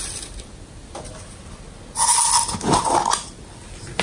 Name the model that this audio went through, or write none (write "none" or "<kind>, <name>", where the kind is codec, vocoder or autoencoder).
none